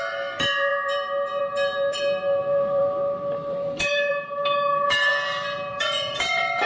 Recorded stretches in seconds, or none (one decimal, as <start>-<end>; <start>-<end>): 5.1-5.7